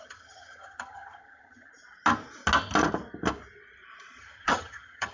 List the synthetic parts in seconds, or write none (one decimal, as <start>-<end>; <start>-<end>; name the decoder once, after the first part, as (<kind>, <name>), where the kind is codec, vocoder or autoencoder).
0.0-1.7 (vocoder, HiFi-GAN); 4.2-5.1